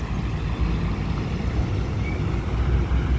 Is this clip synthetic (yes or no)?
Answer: no